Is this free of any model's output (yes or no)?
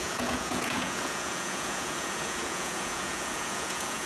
no